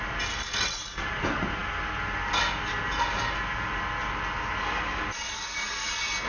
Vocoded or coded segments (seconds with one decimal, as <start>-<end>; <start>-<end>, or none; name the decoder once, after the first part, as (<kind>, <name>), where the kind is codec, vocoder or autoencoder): none